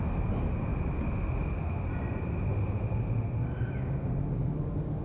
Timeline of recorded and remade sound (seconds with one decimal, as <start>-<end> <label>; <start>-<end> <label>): 0.0-5.0 recorded

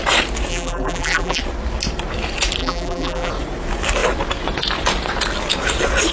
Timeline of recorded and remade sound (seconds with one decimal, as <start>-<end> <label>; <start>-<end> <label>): 0.0-0.5 recorded; 0.5-1.4 remade; 1.4-2.6 recorded; 2.6-3.3 remade; 3.3-6.1 recorded

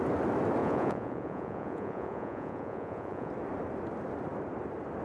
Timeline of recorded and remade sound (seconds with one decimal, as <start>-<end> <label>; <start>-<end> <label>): 0.0-0.6 recorded; 0.6-3.3 remade; 3.3-5.0 recorded